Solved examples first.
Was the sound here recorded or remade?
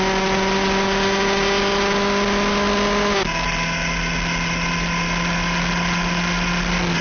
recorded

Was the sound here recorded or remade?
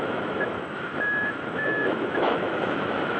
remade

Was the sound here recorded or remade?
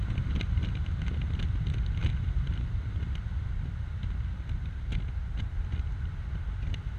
recorded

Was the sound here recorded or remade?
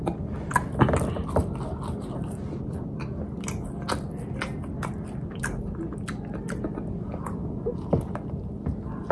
recorded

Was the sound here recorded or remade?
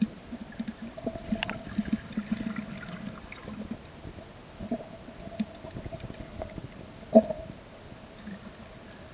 recorded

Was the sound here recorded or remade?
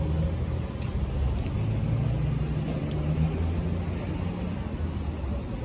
recorded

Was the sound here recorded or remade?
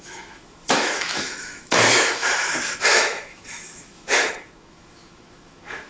remade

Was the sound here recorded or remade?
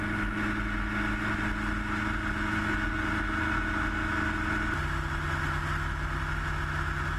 recorded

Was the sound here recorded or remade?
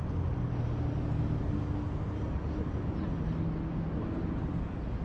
recorded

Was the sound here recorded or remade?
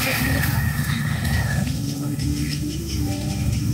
remade